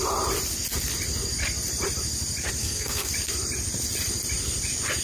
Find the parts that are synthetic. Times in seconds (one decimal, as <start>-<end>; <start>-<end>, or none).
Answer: 2.6-3.1